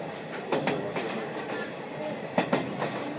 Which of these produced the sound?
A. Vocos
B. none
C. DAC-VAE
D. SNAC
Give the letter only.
B